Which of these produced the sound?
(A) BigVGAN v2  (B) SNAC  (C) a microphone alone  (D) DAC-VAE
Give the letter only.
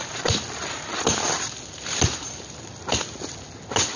C